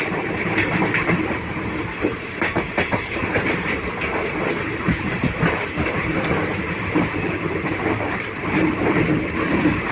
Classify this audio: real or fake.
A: fake